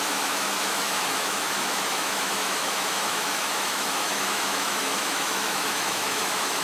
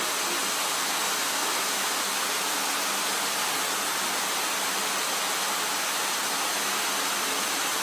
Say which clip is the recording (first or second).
second